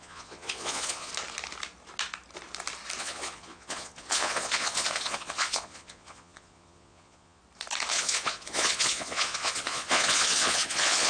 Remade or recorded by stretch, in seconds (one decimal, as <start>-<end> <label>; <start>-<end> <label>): 0.0-1.1 remade; 1.1-3.0 recorded; 3.0-7.4 remade; 7.4-7.9 recorded; 7.9-11.1 remade